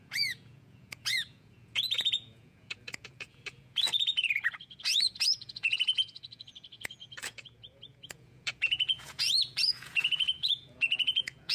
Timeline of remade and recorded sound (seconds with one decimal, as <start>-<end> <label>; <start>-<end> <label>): 0.0-11.5 remade

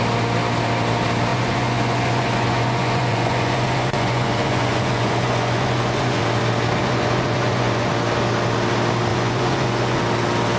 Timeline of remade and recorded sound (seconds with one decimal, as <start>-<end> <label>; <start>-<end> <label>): 0.0-1.3 recorded; 1.3-6.2 remade; 6.2-6.8 recorded; 6.8-7.9 remade; 7.9-9.1 recorded; 9.1-10.0 remade; 10.0-10.6 recorded